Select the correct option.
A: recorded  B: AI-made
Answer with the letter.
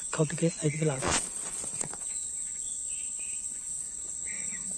B